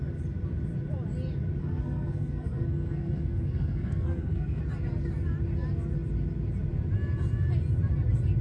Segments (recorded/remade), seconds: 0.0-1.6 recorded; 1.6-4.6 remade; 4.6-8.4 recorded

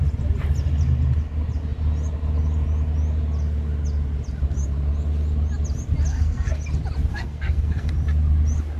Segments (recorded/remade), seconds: 0.0-6.1 recorded; 6.1-6.6 remade; 6.6-7.1 recorded; 7.1-7.9 remade; 7.9-8.8 recorded